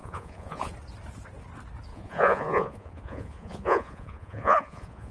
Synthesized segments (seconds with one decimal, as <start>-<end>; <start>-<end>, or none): 0.0-0.7; 1.9-5.1